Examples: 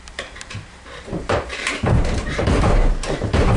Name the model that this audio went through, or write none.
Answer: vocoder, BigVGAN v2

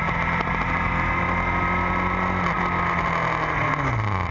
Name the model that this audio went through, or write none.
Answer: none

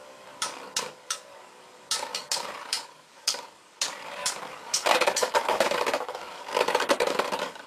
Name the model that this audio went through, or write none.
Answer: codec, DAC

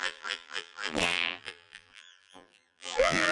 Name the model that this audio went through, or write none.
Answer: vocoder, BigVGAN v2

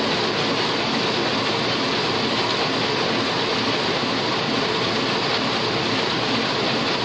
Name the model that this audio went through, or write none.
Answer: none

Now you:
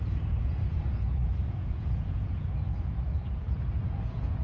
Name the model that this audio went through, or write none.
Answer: vocoder, Vocos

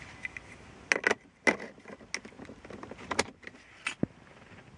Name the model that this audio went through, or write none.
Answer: none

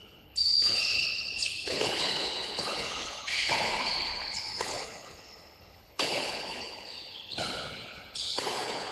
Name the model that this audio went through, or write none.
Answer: codec, HILCodec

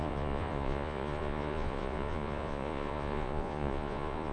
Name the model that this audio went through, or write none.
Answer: vocoder, Vocos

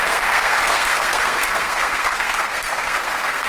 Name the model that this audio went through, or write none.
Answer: codec, SNAC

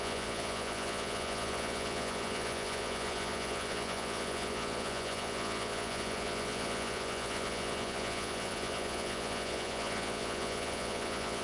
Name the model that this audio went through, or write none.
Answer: vocoder, Vocos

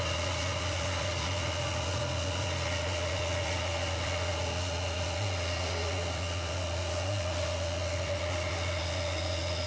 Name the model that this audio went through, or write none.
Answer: vocoder, Vocos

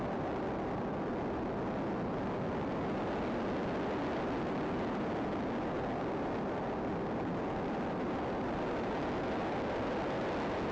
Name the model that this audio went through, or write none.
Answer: none